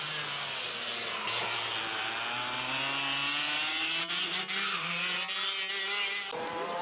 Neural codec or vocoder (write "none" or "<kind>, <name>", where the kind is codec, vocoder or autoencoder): none